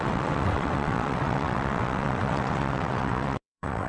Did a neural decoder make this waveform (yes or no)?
yes